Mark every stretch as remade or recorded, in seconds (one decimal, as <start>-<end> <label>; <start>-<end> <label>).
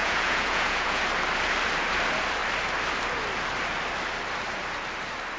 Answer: 0.0-1.0 remade; 1.0-5.4 recorded